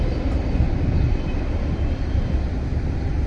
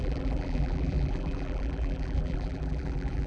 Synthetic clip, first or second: second